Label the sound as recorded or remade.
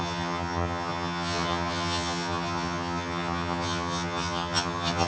remade